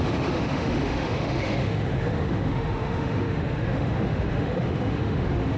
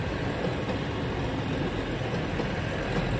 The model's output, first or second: first